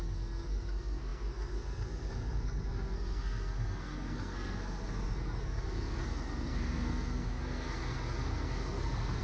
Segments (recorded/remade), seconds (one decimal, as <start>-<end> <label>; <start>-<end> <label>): 0.0-9.2 remade